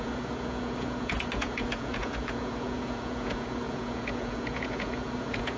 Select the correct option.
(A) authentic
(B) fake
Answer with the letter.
B